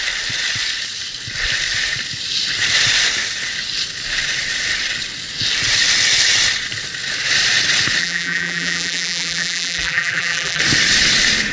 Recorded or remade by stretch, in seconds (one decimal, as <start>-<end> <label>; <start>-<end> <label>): 0.0-8.0 recorded; 8.0-10.6 remade; 10.6-11.5 recorded